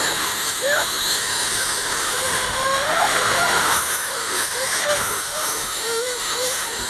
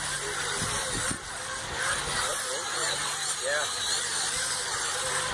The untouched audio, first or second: second